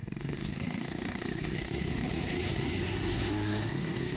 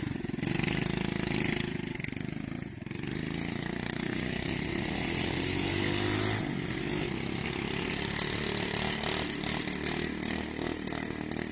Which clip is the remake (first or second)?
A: first